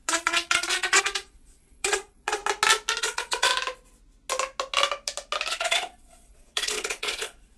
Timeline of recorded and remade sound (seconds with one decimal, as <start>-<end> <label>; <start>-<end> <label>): 0.0-2.4 remade; 2.4-3.0 recorded; 3.0-3.5 remade; 3.5-5.5 recorded; 5.5-7.6 remade

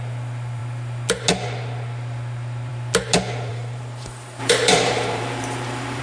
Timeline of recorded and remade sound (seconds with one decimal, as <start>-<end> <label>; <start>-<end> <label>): 0.0-3.5 recorded; 3.5-6.0 remade